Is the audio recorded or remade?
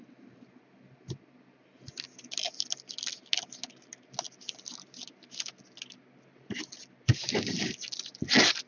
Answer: recorded